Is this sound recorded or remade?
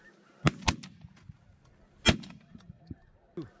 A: recorded